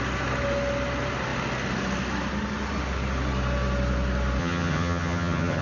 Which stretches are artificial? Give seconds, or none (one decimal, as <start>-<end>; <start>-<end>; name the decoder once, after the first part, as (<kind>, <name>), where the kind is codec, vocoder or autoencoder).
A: 4.4-5.6 (vocoder, HiFi-GAN)